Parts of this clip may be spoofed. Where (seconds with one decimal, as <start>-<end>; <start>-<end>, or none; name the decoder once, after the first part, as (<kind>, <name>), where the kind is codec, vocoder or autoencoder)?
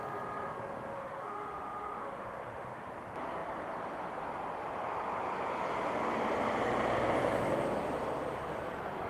0.9-2.9 (autoencoder, DAC-VAE)